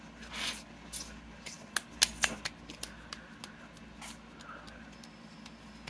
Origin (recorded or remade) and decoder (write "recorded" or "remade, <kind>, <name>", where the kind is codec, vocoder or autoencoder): recorded